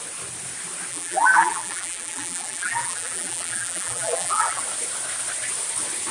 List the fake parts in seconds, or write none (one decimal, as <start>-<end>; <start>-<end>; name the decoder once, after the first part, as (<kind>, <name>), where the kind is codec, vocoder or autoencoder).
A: 0.9-4.6 (vocoder, BigVGAN v2)